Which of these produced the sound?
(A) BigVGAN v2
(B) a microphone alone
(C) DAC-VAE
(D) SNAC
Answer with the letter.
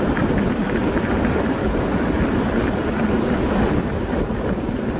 B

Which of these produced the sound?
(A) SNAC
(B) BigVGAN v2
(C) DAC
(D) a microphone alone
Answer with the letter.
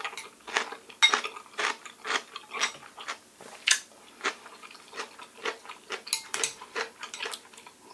D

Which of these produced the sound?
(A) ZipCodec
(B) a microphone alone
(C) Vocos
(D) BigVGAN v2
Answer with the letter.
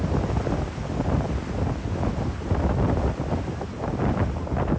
B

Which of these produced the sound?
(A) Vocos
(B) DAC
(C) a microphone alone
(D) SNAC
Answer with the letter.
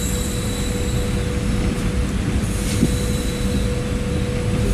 C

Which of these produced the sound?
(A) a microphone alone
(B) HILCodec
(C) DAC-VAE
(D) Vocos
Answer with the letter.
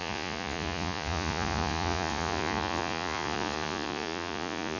D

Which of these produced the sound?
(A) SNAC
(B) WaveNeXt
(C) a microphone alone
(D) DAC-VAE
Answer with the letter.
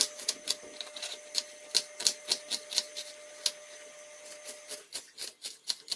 C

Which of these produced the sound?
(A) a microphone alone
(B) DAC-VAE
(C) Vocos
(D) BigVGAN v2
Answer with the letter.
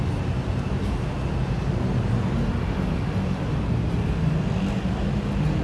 A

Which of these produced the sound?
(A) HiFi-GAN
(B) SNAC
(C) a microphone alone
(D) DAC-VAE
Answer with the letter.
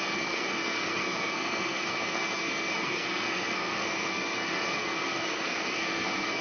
B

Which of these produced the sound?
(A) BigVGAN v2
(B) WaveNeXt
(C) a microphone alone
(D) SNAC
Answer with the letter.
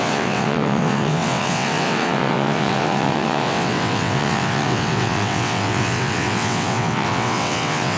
B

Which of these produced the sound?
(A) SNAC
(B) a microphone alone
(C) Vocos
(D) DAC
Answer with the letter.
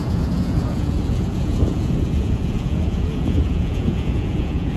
C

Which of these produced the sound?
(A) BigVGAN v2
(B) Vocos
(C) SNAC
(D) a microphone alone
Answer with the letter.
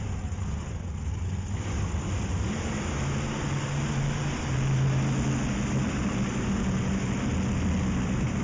D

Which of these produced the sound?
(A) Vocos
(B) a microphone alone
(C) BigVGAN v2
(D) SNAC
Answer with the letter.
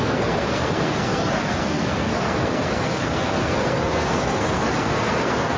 D